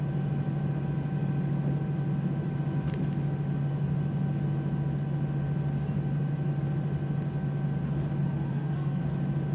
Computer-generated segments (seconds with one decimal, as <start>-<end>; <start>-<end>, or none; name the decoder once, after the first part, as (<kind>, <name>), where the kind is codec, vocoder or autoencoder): 8.5-9.0 (codec, SNAC)